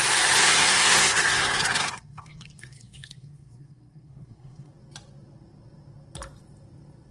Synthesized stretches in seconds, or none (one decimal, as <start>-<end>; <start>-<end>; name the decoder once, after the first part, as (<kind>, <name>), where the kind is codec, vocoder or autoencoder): 0.4-4.7 (codec, SNAC)